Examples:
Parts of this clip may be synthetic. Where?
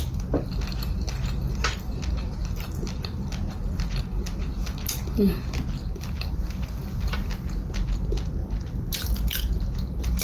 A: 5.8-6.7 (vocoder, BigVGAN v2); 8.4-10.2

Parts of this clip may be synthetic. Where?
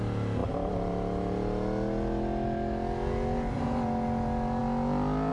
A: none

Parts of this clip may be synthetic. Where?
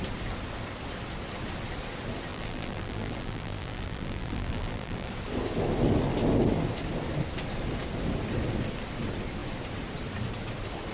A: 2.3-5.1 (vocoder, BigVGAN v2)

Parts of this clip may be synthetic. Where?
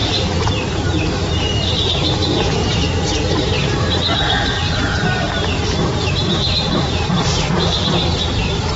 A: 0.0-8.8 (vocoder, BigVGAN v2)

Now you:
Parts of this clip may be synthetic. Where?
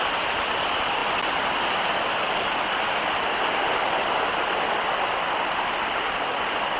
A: none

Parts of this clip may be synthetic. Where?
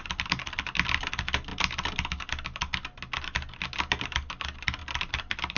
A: 0.0-1.5 (vocoder, BigVGAN v2); 4.0-5.6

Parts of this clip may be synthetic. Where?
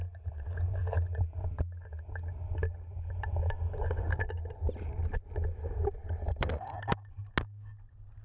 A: 6.0-6.8 (vocoder, BigVGAN v2)